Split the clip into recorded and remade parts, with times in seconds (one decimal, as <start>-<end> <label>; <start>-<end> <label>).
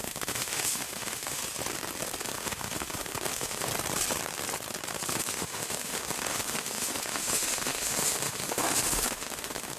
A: 0.0-1.4 remade; 1.4-2.2 recorded; 2.2-3.7 remade; 3.7-5.1 recorded; 5.1-9.8 remade